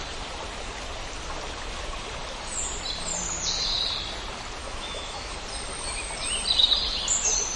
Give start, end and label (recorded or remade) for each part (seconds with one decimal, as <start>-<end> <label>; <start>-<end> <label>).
0.0-4.6 recorded; 4.6-5.4 remade; 5.4-7.6 recorded